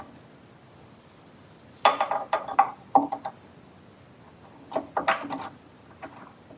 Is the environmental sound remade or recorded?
recorded